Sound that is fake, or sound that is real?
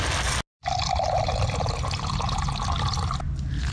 real